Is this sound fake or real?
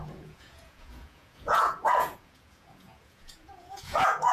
fake